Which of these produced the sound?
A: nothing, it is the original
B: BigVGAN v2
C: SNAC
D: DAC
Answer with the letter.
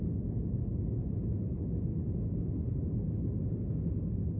A